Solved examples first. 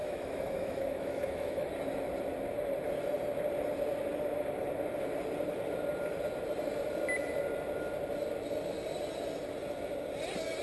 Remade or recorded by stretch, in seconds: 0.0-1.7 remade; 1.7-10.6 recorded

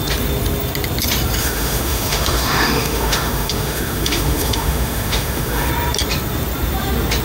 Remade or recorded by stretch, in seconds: 0.0-1.4 recorded; 1.4-5.7 remade; 5.7-7.2 recorded

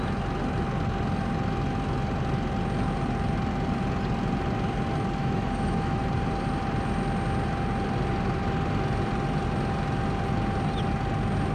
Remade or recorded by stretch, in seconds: 0.0-5.2 recorded; 5.2-6.0 remade; 6.0-11.5 recorded

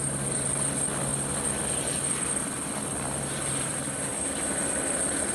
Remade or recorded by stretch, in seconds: 0.0-5.3 recorded